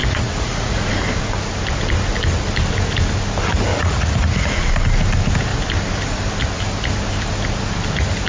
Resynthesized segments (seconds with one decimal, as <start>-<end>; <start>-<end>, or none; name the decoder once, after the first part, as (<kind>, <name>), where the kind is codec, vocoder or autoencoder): 0.0-0.9 (vocoder, Vocos); 3.7-4.7